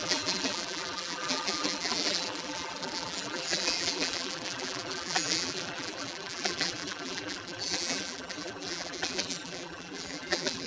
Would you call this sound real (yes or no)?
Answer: no